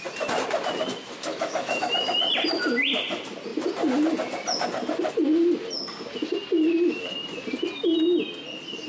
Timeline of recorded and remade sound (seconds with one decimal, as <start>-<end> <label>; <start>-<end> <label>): 0.0-1.3 recorded; 1.3-2.2 remade; 2.2-8.9 recorded